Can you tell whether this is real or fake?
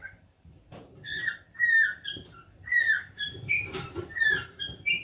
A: fake